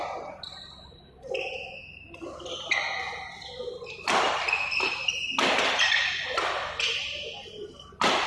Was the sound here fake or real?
real